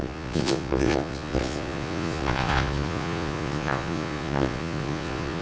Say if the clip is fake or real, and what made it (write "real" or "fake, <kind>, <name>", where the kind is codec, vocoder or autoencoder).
fake, vocoder, Vocos